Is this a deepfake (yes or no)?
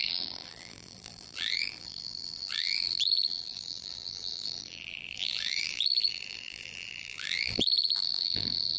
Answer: yes